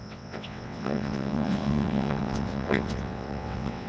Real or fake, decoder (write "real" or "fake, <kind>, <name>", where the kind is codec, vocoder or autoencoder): fake, vocoder, WaveNeXt